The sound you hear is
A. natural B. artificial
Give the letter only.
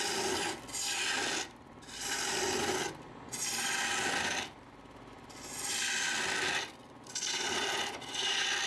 A